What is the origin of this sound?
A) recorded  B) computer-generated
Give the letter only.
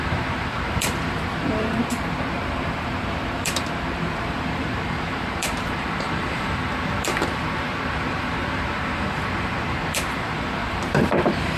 B